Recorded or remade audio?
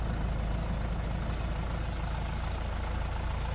recorded